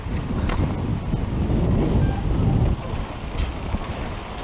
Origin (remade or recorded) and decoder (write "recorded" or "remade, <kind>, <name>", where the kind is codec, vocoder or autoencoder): recorded